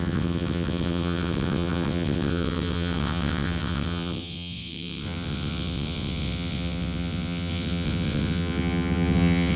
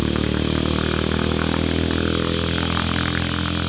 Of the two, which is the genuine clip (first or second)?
second